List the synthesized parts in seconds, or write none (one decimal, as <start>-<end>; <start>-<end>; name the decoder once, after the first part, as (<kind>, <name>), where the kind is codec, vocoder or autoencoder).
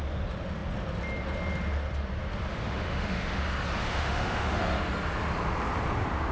2.5-3.4 (autoencoder, DAC-VAE); 3.8-4.6